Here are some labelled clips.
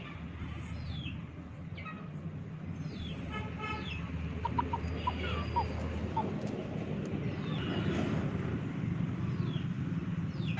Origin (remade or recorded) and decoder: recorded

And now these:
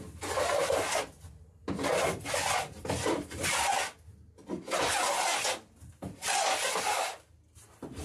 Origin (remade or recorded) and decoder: recorded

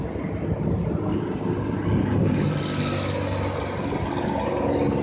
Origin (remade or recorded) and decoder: recorded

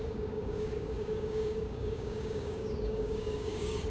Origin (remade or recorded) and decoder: remade, codec, DAC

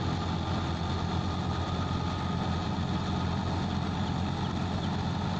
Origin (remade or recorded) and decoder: recorded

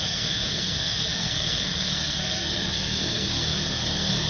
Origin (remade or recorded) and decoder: remade, codec, SNAC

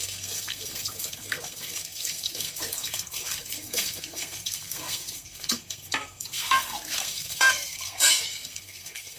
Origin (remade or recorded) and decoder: remade, codec, SNAC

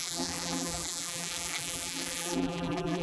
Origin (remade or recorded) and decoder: remade, vocoder, BigVGAN v2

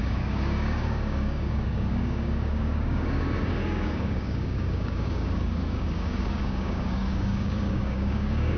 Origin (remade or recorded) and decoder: remade, codec, DAC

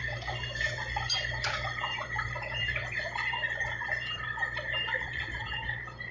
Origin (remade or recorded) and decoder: remade, vocoder, BigVGAN v2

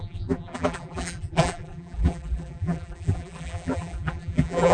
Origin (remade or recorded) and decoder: remade, vocoder, BigVGAN v2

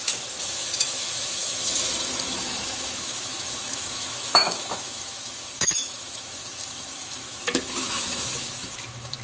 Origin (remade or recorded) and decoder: remade, autoencoder, DAC-VAE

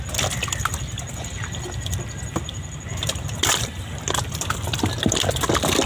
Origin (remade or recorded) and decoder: recorded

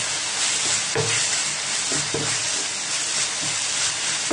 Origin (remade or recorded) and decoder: recorded